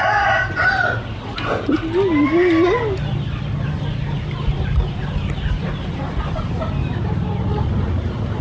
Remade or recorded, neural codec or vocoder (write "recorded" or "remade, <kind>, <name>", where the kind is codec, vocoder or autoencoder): recorded